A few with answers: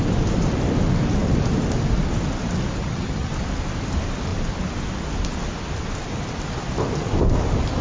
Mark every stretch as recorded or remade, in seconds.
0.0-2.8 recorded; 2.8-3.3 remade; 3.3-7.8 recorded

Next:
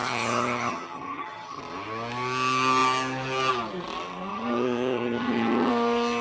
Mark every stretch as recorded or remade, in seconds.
0.0-1.6 remade; 1.6-4.3 recorded; 4.3-5.7 remade; 5.7-6.2 recorded

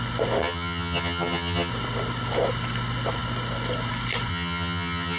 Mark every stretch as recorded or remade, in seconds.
0.0-0.4 recorded; 0.4-1.7 remade; 1.7-4.3 recorded; 4.3-5.2 remade

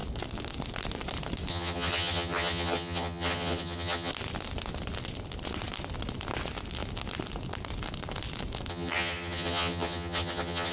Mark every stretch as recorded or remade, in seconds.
0.0-1.5 recorded; 1.5-4.1 remade; 4.1-8.7 recorded; 8.7-10.7 remade

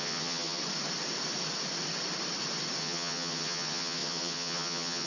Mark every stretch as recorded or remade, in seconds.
0.0-0.6 remade; 0.6-2.8 recorded; 2.8-5.1 remade

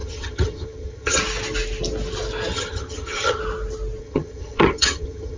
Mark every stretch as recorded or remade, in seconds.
0.0-1.2 remade; 1.2-2.5 recorded; 2.5-3.4 remade; 3.4-4.0 recorded; 4.0-5.4 remade